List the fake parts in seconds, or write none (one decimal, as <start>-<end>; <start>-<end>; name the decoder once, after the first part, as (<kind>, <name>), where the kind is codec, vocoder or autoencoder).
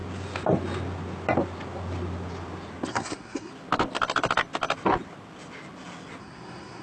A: 2.9-3.5 (codec, SNAC); 6.2-6.8